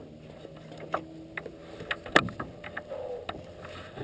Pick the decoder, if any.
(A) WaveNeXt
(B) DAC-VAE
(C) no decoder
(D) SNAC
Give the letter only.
C